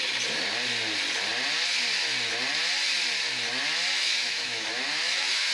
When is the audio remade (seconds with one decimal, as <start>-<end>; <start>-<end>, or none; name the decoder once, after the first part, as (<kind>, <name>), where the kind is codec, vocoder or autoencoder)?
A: 4.0-5.5 (autoencoder, DAC-VAE)